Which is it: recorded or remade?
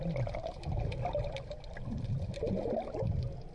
recorded